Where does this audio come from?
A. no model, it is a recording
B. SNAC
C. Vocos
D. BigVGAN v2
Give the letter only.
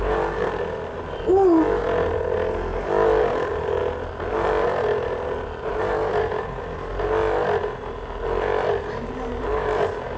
A